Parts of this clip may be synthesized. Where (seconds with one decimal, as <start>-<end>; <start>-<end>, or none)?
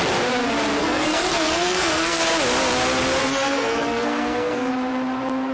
0.8-2.2; 3.2-4.7